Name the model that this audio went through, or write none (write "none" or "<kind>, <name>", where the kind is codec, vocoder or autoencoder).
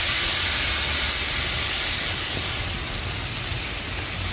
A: none